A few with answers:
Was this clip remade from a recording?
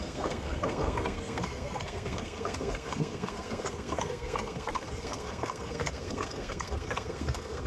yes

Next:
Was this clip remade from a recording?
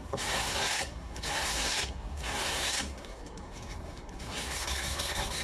yes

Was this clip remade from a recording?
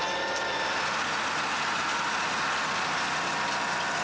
no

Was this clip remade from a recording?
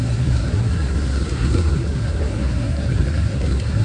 yes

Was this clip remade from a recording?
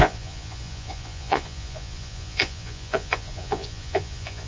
yes